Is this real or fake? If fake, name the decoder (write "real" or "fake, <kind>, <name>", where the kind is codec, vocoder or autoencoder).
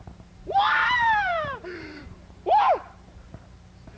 fake, vocoder, BigVGAN v2